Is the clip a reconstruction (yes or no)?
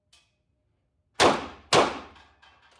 no